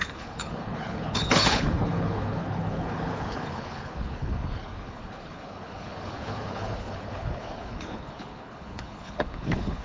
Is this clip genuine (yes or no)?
no